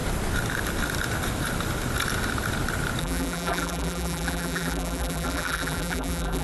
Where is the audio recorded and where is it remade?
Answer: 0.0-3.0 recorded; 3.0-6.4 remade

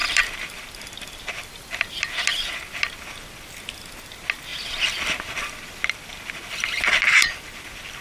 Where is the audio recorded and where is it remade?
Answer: 0.0-8.0 recorded

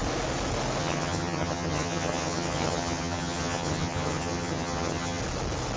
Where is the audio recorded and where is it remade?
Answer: 0.0-0.8 recorded; 0.8-5.2 remade; 5.2-5.8 recorded

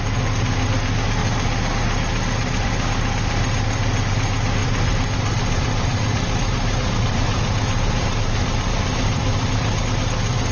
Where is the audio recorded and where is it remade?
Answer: 0.0-4.6 recorded; 4.6-9.8 remade; 9.8-10.5 recorded

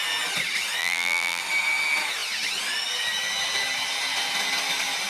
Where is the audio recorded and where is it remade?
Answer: 0.0-0.8 recorded; 0.8-1.4 remade; 1.4-5.1 recorded